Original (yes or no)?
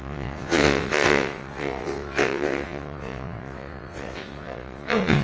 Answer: no